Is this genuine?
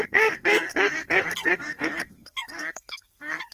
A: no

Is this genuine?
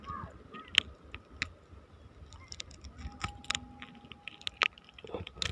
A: yes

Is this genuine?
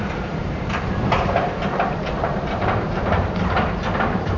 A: no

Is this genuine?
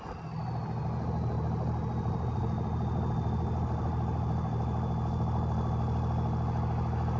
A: yes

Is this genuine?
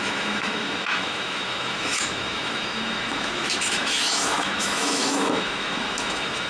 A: no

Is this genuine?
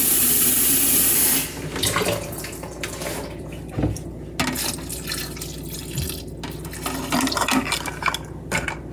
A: yes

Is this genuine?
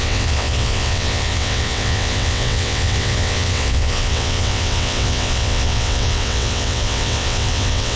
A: no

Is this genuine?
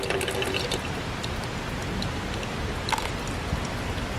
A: no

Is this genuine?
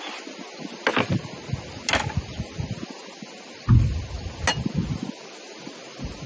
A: yes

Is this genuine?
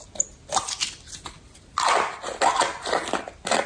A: yes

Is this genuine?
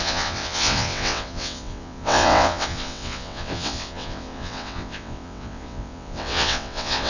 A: no